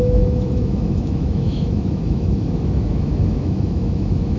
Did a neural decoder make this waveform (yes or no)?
yes